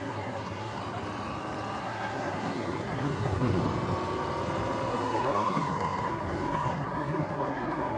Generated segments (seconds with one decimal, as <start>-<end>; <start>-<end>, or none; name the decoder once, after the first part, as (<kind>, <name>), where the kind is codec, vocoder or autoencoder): 0.0-0.8 (codec, SNAC); 1.8-3.6; 4.9-8.0